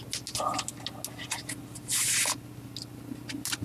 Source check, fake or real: real